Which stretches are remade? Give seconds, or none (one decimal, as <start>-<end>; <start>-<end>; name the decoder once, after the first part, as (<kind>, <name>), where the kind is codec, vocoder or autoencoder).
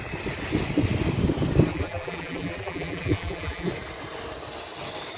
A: 1.7-3.7 (vocoder, BigVGAN v2)